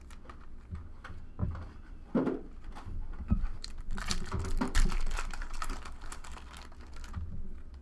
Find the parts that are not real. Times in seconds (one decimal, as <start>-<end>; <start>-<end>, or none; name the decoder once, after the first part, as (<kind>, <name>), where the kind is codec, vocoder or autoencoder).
1.4-6.1 (vocoder, BigVGAN v2)